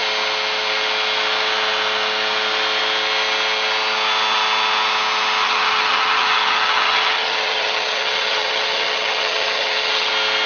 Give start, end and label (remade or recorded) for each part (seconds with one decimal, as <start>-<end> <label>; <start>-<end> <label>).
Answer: 0.0-5.4 recorded; 5.4-10.1 remade; 10.1-10.5 recorded